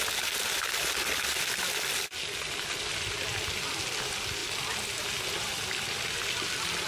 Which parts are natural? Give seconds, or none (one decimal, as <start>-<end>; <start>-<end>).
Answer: 0.0-6.9